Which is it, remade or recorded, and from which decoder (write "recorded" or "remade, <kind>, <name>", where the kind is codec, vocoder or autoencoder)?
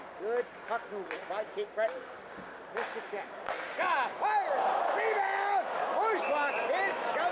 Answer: recorded